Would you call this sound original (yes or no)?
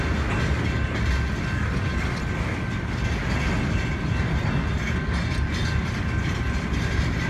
yes